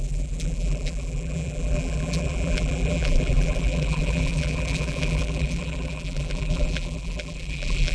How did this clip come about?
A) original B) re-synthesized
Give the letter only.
B